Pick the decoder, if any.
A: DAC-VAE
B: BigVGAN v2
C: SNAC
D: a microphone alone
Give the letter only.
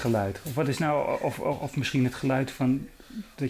D